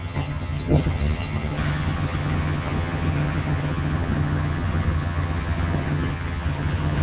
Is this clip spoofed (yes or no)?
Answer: yes